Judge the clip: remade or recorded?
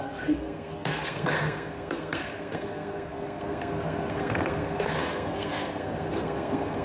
remade